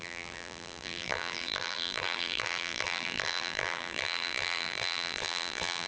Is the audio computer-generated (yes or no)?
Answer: yes